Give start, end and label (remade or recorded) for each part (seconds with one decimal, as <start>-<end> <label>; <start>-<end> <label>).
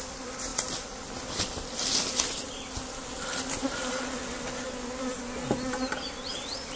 0.0-6.8 recorded